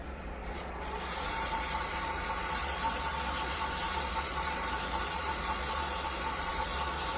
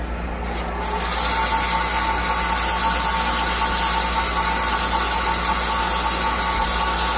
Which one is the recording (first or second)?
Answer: second